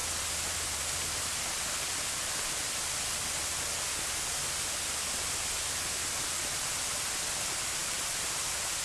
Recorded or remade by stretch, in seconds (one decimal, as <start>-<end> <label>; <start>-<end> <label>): 0.0-7.8 recorded; 7.8-8.4 remade; 8.4-8.8 recorded